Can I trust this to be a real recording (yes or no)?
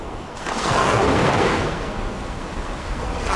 no